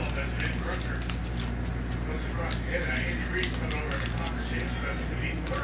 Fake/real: real